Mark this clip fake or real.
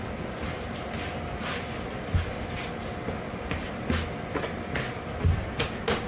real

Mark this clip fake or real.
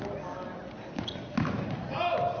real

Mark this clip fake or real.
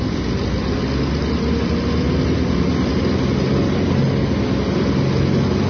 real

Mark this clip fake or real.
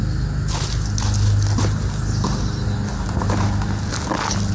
real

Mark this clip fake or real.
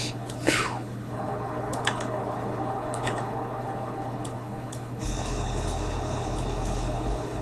fake